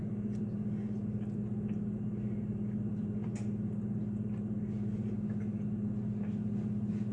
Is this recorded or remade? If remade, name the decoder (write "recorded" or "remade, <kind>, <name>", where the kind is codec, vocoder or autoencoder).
recorded